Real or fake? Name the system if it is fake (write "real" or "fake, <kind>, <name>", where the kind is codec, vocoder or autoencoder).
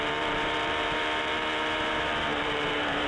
fake, vocoder, BigVGAN v2